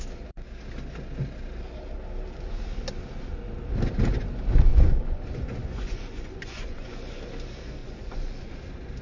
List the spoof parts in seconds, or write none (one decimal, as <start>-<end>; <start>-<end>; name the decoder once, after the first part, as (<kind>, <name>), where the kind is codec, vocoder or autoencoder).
4.7-7.2 (vocoder, Vocos); 7.8-8.5